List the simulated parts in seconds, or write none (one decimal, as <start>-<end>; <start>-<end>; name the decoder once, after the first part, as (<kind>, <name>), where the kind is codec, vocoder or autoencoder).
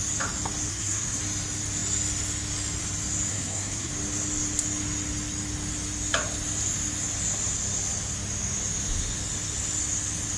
0.7-1.2 (codec, SNAC); 3.3-3.9